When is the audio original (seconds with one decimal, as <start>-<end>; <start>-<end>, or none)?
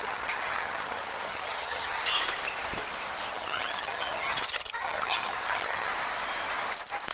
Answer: 2.1-3.3; 5.9-7.1